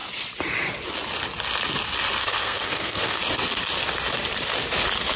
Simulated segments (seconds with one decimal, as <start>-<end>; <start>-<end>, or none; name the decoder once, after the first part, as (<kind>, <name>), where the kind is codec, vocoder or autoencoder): 2.2-3.2 (codec, SNAC)